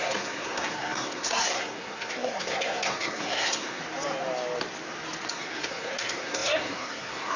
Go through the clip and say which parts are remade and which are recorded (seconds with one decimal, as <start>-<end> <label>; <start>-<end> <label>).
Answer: 0.0-3.8 remade; 3.8-5.3 recorded; 5.3-7.4 remade